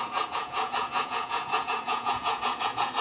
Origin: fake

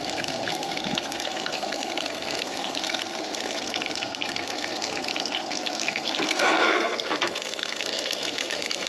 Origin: fake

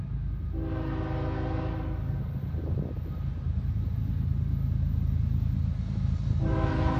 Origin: real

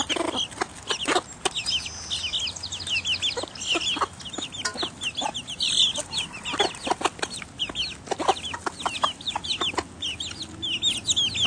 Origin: real